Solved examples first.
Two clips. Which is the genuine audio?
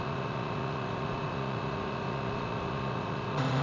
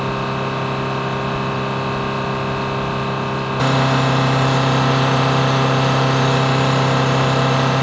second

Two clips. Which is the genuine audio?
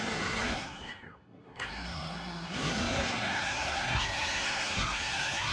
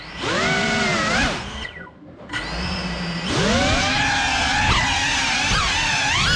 second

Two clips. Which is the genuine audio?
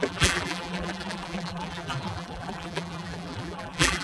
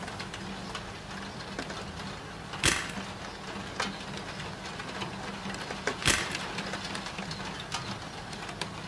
second